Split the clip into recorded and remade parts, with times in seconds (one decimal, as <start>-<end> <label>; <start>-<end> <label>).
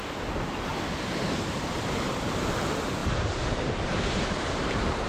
0.0-0.7 remade; 0.7-1.3 recorded; 1.3-3.0 remade; 3.0-3.5 recorded; 3.5-5.1 remade